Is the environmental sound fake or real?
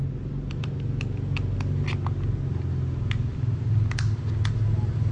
real